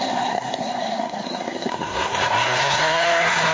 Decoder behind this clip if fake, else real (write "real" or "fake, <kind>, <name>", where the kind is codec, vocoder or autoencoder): fake, codec, SNAC